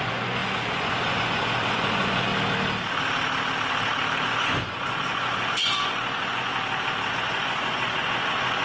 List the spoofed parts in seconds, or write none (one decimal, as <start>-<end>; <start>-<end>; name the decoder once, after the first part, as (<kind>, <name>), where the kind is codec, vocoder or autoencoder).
0.0-2.3 (vocoder, Vocos); 4.2-6.5; 7.1-8.6